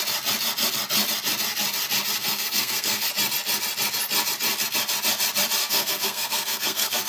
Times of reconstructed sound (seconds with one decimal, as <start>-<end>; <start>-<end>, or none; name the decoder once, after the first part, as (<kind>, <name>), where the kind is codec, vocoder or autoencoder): 2.2-3.1 (codec, SNAC); 5.6-7.1